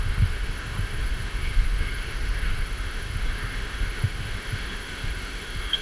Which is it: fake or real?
fake